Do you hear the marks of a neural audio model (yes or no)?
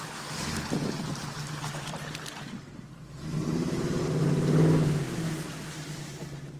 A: no